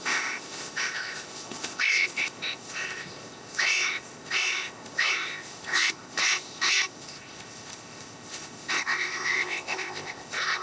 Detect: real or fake fake